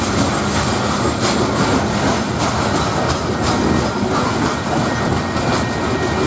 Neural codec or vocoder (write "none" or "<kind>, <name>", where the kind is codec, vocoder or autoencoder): none